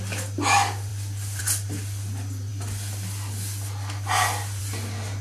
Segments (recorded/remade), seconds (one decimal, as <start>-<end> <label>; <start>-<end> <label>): 0.0-5.2 recorded